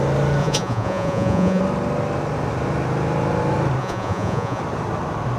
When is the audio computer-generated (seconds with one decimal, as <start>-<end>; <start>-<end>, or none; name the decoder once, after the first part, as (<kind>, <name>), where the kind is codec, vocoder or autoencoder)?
0.4-1.6 (vocoder, Vocos); 3.8-4.6